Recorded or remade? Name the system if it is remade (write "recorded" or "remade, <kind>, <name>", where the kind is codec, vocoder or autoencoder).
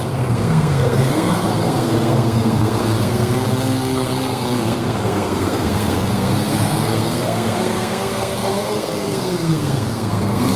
remade, codec, SNAC